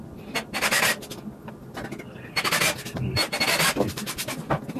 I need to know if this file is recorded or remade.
recorded